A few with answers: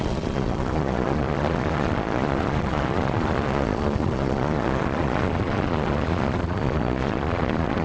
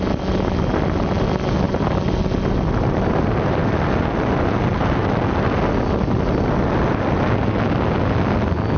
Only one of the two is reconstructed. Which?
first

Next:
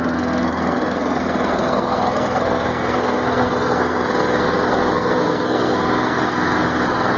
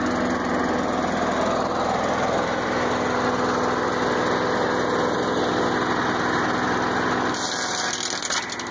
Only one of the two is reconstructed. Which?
first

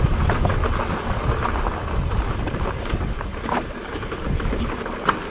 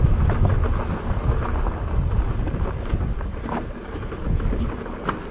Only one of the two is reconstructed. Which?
first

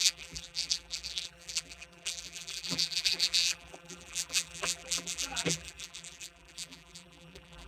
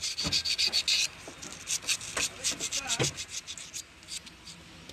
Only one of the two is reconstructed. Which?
first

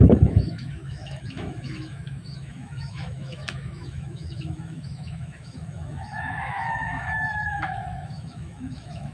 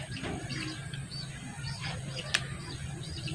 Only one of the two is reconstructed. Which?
first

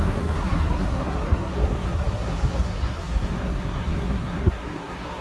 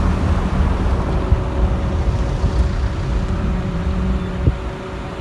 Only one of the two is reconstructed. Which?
first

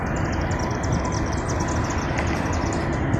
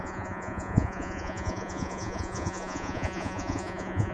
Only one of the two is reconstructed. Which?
second